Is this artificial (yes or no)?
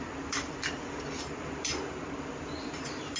yes